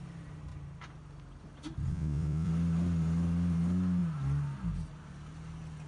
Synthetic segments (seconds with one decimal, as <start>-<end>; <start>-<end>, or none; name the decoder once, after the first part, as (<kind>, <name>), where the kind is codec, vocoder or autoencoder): 1.9-2.5 (vocoder, Vocos)

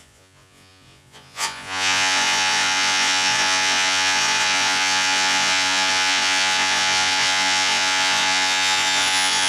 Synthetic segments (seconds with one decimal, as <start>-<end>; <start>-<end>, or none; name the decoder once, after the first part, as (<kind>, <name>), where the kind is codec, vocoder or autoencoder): 0.0-9.5 (vocoder, Vocos)

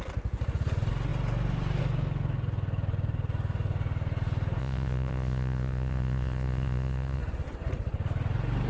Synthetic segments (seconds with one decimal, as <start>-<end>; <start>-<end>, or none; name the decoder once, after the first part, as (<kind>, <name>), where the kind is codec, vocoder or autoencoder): 4.6-7.2 (vocoder, Vocos)

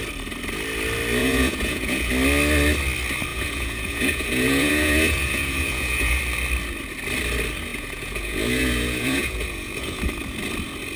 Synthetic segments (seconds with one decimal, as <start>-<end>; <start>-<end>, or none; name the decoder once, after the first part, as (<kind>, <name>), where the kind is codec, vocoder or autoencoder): 1.2-2.1 (vocoder, Vocos); 3.3-6.2; 7.7-10.0